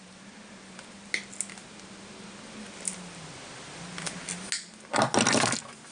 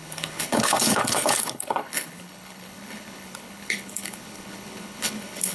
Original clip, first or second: first